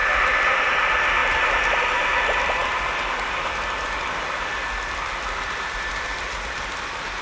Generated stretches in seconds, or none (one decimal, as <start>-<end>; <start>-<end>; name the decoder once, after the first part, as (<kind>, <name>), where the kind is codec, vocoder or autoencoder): 0.0-0.6 (vocoder, BigVGAN v2); 1.2-1.8